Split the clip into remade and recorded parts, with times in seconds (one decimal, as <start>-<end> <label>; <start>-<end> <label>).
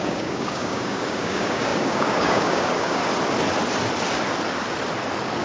0.0-3.0 remade; 3.0-5.4 recorded